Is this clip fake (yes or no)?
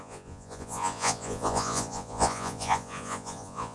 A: yes